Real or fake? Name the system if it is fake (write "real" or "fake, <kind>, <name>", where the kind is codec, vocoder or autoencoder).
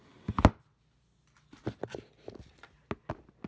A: real